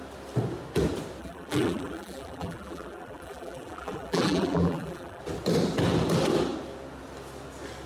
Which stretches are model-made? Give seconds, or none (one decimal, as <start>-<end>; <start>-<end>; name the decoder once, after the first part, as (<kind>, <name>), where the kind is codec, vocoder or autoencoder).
1.2-5.2 (vocoder, BigVGAN v2)